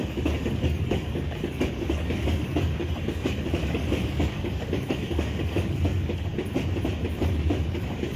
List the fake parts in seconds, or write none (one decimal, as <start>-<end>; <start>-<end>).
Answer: 0.0-6.3; 7.2-8.2